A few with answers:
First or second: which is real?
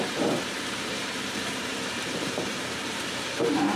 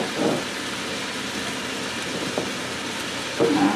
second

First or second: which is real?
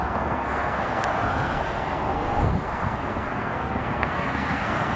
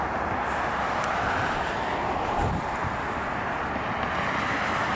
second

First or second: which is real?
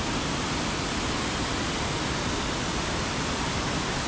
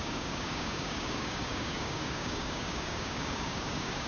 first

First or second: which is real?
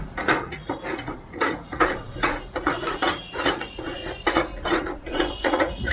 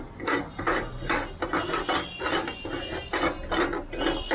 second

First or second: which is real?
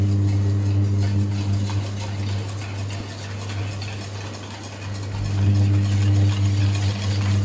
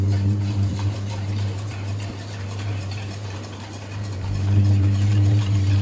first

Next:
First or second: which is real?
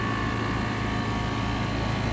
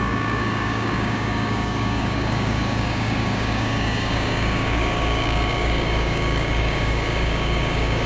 first